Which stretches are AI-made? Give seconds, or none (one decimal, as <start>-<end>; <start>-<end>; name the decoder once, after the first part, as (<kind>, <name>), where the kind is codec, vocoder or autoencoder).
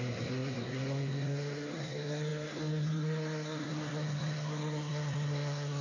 0.0-5.8 (codec, SNAC)